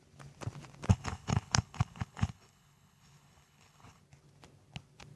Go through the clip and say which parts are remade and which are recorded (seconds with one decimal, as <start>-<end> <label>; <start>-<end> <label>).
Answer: 0.0-0.9 recorded; 0.9-4.0 remade; 4.0-5.2 recorded